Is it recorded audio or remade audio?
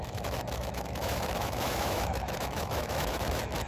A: remade